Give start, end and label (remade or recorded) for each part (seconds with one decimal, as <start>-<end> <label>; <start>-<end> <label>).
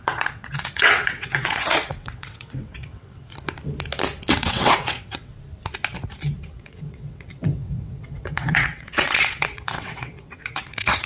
0.0-3.3 remade; 3.3-4.3 recorded; 4.3-5.3 remade; 5.3-6.5 recorded; 6.5-11.1 remade